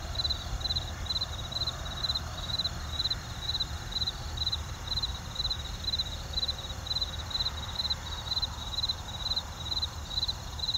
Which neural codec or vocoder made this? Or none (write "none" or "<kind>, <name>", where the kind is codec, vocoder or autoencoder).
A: vocoder, BigVGAN v2